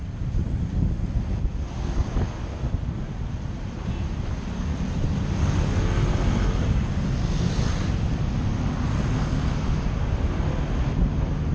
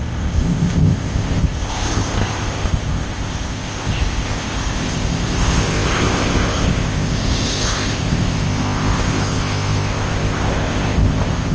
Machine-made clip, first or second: second